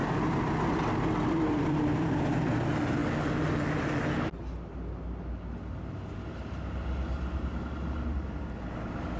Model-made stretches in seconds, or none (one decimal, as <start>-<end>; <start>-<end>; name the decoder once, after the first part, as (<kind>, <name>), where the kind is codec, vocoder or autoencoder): 0.0-2.2 (vocoder, BigVGAN v2)